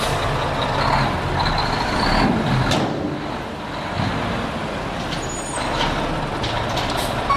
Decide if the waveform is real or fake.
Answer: real